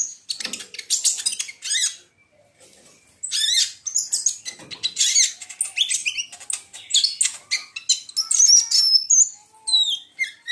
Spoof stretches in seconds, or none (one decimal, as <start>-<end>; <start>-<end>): none